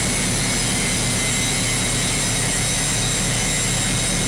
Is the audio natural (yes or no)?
yes